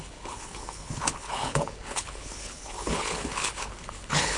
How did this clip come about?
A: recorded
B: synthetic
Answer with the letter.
B